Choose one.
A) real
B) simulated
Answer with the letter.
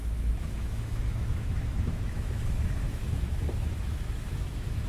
B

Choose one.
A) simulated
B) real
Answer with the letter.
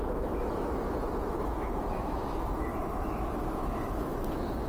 A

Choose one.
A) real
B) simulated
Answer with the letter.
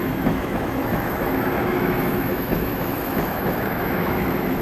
B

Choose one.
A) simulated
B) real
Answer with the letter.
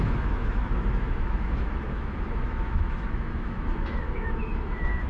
A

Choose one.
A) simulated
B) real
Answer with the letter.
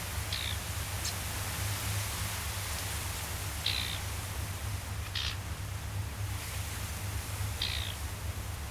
B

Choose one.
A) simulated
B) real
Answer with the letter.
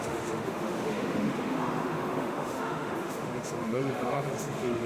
A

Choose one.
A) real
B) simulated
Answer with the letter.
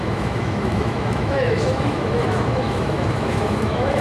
B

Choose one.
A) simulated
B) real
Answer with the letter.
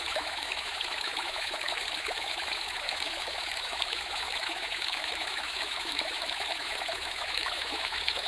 A